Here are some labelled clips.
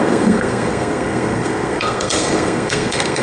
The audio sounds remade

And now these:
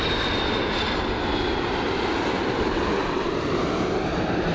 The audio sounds recorded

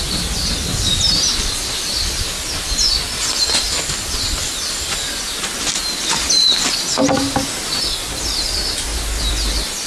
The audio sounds recorded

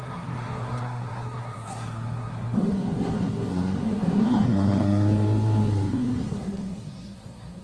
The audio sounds remade